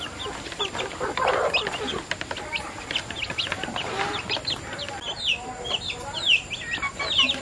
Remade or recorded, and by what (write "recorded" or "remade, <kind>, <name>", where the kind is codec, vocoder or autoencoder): recorded